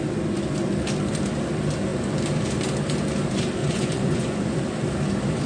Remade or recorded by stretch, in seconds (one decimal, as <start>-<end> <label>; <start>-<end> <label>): 0.0-3.6 recorded; 3.6-4.6 remade; 4.6-5.5 recorded